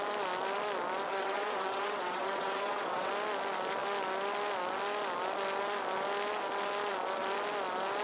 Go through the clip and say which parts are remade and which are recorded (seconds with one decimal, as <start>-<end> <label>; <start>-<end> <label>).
0.0-1.1 recorded; 1.1-3.1 remade; 3.1-8.0 recorded